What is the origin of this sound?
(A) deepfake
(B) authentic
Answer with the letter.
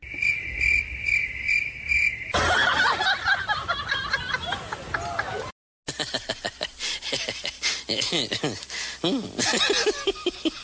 B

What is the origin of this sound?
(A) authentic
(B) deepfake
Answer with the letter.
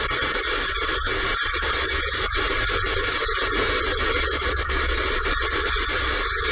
A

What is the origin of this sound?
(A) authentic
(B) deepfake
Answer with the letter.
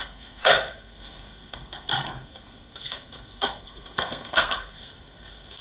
B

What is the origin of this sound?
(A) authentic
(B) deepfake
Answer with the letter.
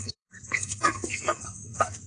B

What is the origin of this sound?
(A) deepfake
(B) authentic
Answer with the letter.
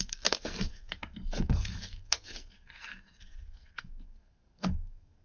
A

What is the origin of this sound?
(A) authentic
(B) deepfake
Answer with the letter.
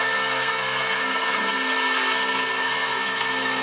B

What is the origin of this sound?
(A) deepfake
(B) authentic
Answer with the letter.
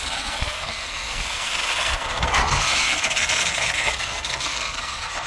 A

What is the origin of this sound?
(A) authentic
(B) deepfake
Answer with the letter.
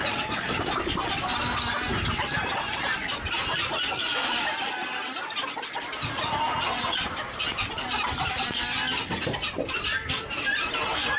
A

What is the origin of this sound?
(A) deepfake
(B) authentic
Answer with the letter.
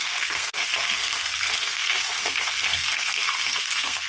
A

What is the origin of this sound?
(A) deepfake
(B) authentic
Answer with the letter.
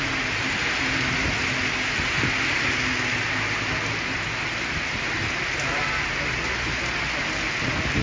B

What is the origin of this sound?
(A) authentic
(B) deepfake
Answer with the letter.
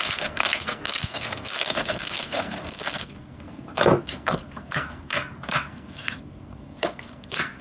B